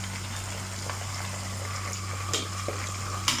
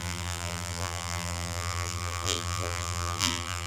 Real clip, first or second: first